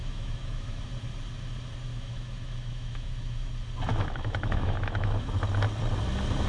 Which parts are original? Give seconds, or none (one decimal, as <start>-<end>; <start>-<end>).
0.8-1.9; 3.5-3.9; 5.3-6.5